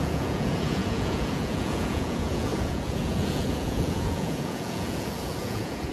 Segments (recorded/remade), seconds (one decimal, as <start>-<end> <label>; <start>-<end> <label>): 0.0-5.9 remade